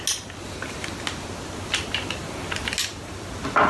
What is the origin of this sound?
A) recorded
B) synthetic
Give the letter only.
A